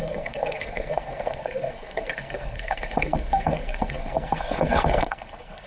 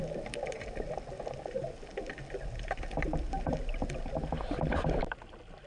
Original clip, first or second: second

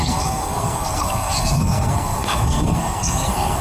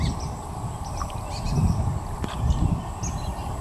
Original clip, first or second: second